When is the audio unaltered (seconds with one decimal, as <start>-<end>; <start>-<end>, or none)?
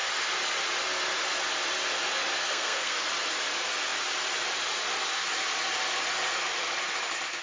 0.0-2.4; 3.1-7.4